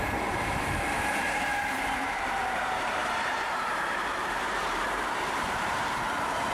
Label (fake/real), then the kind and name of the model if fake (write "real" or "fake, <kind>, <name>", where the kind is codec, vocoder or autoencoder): fake, vocoder, BigVGAN v2